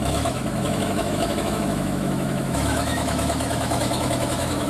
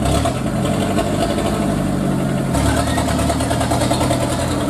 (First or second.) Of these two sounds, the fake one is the first